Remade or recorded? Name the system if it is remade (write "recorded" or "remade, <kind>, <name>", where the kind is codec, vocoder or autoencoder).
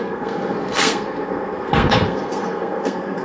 remade, codec, SNAC